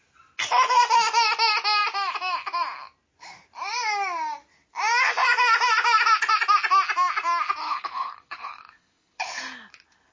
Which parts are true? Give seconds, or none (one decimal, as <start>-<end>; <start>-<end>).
0.0-7.6; 9.4-10.1